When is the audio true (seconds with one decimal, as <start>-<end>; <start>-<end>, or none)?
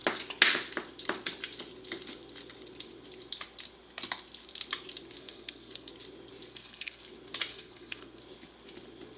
0.0-5.2; 5.9-6.5; 7.0-7.5; 8.2-9.2